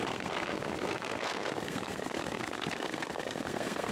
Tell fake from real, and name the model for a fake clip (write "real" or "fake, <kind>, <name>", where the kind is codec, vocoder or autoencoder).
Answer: fake, codec, SNAC